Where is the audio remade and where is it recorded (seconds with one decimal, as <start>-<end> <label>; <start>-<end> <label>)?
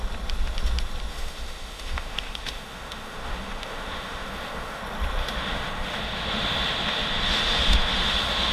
0.0-1.1 recorded; 1.1-4.8 remade; 4.8-5.2 recorded; 5.2-8.5 remade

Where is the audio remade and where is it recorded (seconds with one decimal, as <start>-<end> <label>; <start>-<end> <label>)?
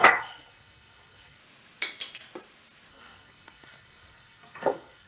0.0-1.4 remade; 1.4-2.9 recorded; 2.9-5.1 remade